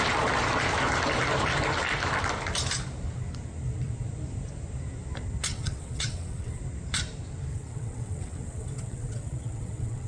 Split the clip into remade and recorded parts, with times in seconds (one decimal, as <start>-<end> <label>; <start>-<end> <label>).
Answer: 0.0-5.5 recorded; 5.5-6.6 remade; 6.6-7.5 recorded; 7.5-10.1 remade